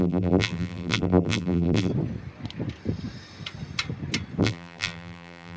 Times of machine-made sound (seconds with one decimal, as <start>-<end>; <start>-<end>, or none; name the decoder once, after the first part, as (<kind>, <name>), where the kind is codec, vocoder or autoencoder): 0.0-1.9 (vocoder, BigVGAN v2); 4.4-5.6